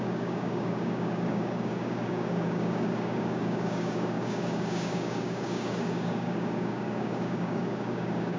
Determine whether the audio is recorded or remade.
remade